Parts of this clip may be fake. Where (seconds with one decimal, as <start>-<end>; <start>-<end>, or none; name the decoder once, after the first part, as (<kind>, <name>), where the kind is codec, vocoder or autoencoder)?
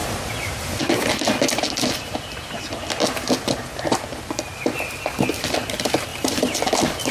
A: 0.0-0.8 (vocoder, BigVGAN v2); 3.7-4.2; 6.1-6.6